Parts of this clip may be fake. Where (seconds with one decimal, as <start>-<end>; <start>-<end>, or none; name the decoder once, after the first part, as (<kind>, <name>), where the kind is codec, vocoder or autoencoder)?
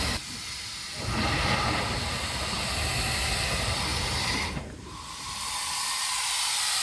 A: none